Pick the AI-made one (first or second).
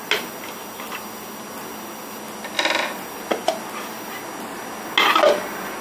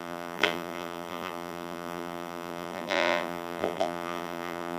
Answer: second